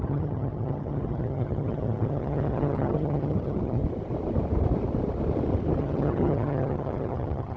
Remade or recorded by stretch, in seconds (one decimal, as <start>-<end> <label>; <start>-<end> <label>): 0.0-3.8 remade; 3.8-5.8 recorded; 5.8-7.6 remade